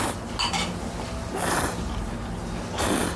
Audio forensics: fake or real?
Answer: real